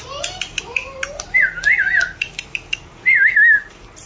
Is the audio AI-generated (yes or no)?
no